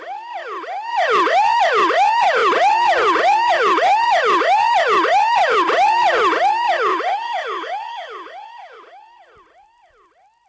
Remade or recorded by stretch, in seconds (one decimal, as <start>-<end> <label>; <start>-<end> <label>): 0.0-6.9 recorded; 6.9-8.8 remade; 8.8-10.5 recorded